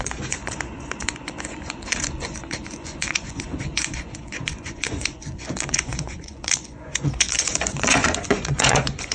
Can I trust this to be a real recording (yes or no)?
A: no